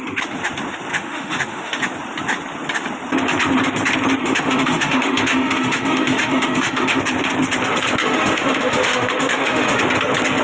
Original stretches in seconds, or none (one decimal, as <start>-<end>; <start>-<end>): 0.0-0.9; 1.8-4.2; 7.0-8.0; 9.8-10.4